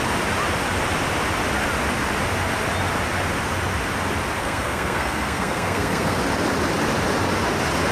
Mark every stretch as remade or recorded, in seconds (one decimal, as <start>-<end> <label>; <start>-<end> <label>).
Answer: 0.0-4.4 recorded; 4.4-6.2 remade; 6.2-7.9 recorded